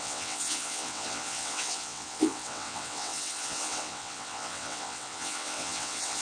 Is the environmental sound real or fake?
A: fake